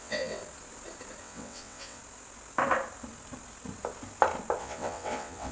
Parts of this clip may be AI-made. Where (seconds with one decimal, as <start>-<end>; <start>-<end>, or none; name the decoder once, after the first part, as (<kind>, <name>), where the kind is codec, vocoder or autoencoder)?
0.0-0.4 (vocoder, WaveNeXt); 1.2-2.0; 4.6-5.5